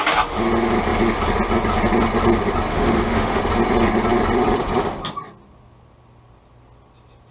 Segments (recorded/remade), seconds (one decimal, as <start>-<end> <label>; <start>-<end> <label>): 0.0-2.7 recorded; 2.7-3.4 remade; 3.4-7.3 recorded